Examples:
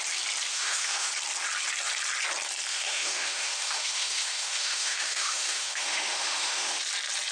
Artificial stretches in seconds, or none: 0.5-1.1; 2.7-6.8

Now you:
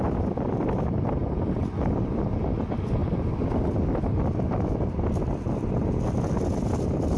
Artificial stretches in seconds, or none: none